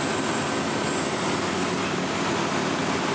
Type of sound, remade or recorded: recorded